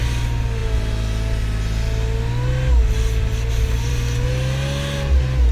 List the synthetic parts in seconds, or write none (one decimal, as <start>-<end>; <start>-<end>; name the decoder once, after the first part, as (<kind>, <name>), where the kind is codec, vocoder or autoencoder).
none